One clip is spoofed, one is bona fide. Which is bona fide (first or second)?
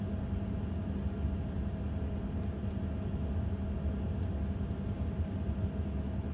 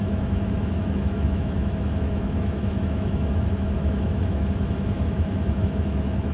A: first